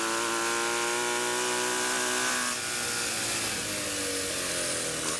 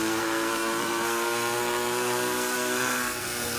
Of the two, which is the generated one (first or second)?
second